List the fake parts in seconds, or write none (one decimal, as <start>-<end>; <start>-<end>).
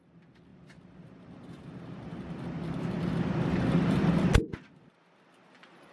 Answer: 0.5-1.8